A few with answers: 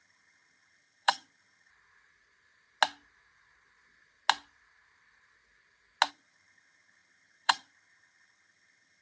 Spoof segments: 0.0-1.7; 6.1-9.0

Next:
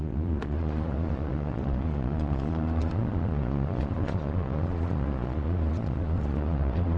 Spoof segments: 0.0-7.0

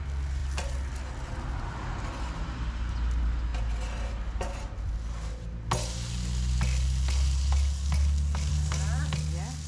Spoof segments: none

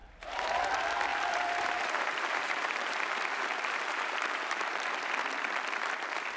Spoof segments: 0.0-0.7; 1.1-4.9

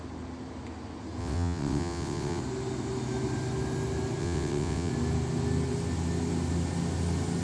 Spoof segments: 1.2-2.4; 4.2-4.9

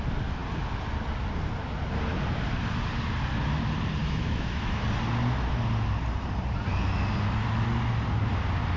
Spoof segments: 4.0-4.8

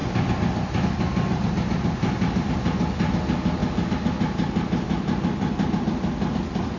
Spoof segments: none

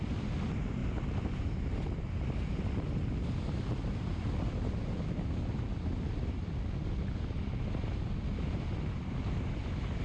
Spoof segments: 0.8-4.6